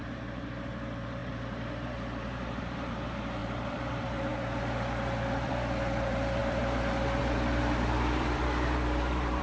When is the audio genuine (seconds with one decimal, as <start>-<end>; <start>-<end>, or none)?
none